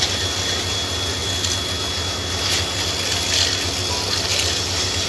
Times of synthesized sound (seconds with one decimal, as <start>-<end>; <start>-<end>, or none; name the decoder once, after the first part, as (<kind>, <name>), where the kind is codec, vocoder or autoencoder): 4.3-5.1 (vocoder, BigVGAN v2)